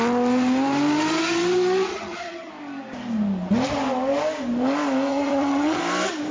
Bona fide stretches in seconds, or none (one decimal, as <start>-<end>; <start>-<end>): 0.0-1.9; 2.5-5.1; 5.8-6.3